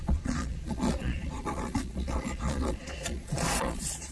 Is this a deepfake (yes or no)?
yes